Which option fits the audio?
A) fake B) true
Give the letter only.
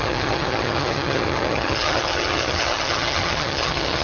A